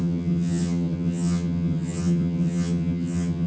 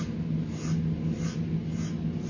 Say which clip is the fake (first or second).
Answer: first